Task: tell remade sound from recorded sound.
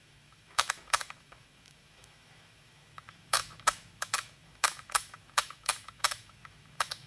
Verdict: remade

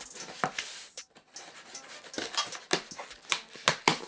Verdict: recorded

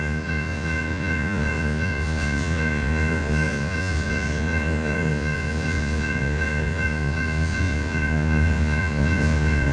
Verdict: remade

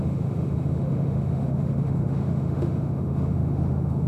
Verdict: remade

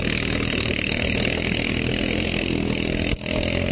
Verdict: recorded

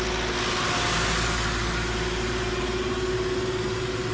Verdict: recorded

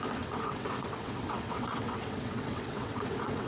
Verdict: remade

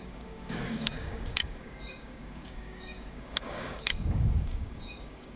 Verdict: remade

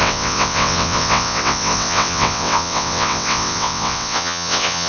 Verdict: remade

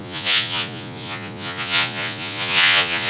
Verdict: remade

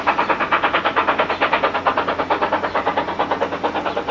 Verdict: recorded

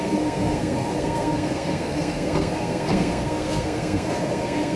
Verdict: remade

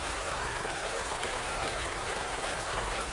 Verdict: remade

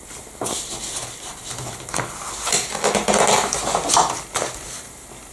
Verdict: recorded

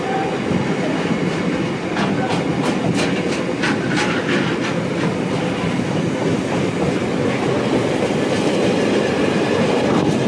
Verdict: recorded